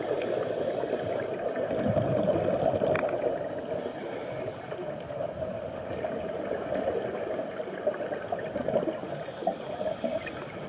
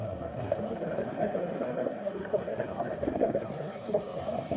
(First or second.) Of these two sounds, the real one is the first